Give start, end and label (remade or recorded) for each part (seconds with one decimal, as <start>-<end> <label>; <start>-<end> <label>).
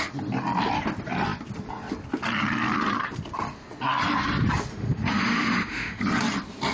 0.0-4.7 recorded; 4.7-6.0 remade; 6.0-6.7 recorded